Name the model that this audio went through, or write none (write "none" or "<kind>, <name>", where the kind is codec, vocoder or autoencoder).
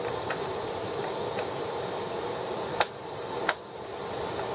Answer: none